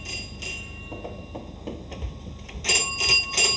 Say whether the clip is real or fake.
real